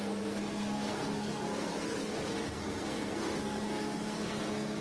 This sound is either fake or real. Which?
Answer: fake